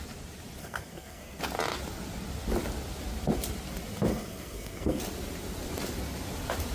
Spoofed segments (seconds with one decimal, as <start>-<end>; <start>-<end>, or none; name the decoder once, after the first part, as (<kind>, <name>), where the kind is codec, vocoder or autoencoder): 0.6-1.4 (codec, SNAC); 4.1-5.0